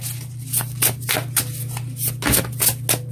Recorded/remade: recorded